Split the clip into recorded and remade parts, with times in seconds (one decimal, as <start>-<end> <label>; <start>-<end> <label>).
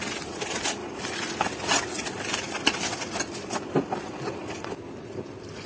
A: 0.0-5.7 recorded